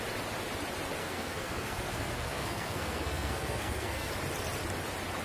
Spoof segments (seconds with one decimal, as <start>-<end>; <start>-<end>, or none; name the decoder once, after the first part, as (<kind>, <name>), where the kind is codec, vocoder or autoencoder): 1.0-4.1 (codec, SNAC)